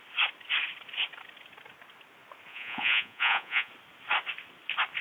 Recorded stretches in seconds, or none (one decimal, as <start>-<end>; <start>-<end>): 0.0-2.5; 3.7-5.0